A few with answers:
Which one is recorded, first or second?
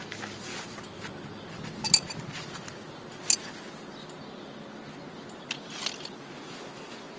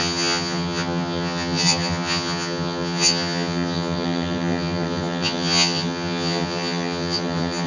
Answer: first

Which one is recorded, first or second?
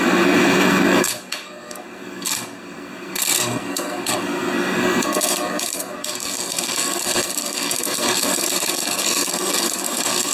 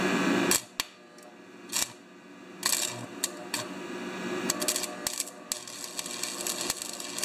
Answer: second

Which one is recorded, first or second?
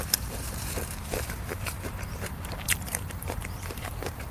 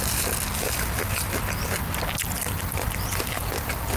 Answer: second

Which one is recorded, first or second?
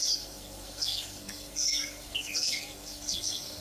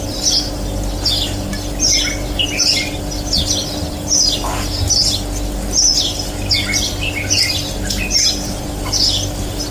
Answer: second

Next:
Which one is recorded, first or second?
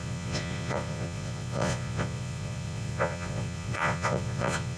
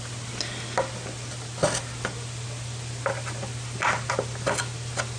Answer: second